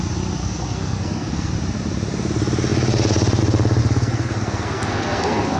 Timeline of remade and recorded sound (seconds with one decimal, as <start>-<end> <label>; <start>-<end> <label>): 0.0-0.4 recorded; 0.4-1.5 remade; 1.5-3.8 recorded; 3.8-5.6 remade